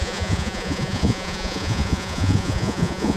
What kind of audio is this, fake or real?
fake